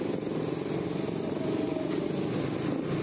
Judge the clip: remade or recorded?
recorded